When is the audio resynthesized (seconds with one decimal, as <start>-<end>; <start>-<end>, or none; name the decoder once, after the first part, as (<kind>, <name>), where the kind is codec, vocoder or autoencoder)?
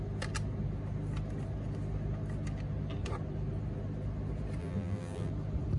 4.6-5.3 (vocoder, BigVGAN v2)